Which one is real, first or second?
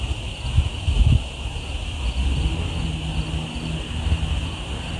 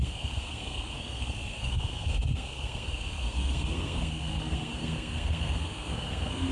first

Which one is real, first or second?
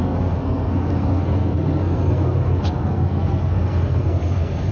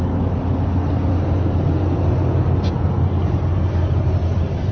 second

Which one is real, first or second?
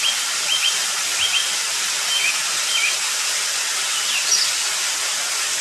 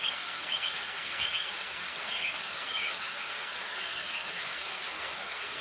first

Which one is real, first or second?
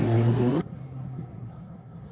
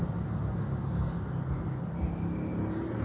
second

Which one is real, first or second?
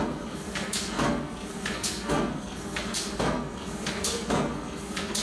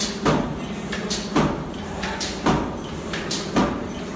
second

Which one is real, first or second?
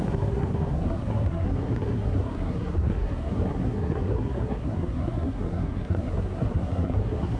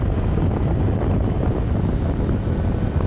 second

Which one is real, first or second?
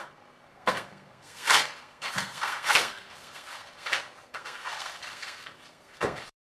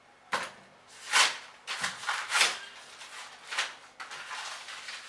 second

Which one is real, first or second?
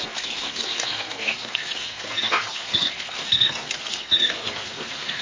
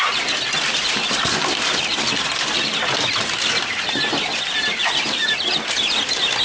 second